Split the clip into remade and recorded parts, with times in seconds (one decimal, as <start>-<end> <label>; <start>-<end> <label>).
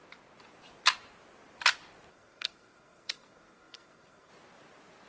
0.0-2.1 recorded; 2.1-4.3 remade; 4.3-5.1 recorded